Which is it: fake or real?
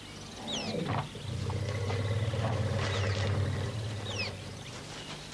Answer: real